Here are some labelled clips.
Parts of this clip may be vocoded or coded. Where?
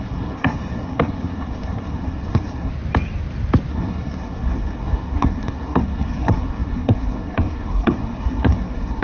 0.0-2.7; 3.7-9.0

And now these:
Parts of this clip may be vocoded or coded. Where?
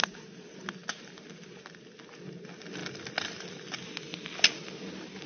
none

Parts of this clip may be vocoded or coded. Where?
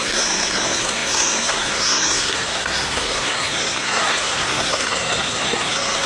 0.0-6.1